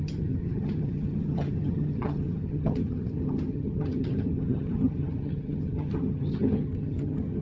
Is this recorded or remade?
remade